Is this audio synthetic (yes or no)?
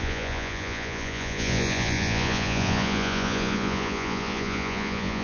yes